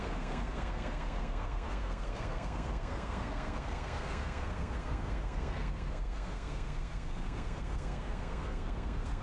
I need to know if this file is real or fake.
fake